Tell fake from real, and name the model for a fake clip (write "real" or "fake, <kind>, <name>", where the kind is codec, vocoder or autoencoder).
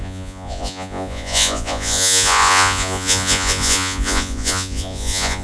fake, vocoder, Vocos